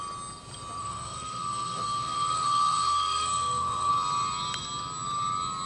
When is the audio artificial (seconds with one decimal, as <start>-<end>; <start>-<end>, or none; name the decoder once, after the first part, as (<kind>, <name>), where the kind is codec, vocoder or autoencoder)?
0.8-3.9 (codec, SNAC)